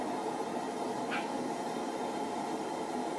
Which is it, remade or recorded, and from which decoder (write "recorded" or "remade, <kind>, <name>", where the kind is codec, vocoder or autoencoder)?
recorded